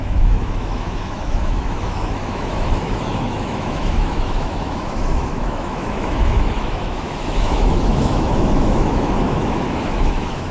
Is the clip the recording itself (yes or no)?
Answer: no